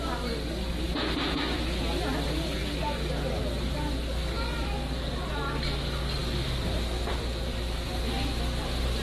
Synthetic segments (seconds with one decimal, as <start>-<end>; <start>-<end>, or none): 1.2-1.8